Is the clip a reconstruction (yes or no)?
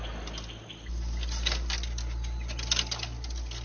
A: no